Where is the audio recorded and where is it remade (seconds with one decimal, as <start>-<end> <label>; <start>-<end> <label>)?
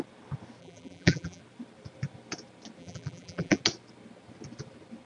0.0-0.6 recorded; 0.6-1.4 remade; 1.4-2.8 recorded; 2.8-3.6 remade; 3.6-5.1 recorded